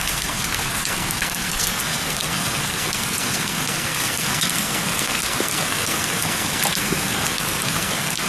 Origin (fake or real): fake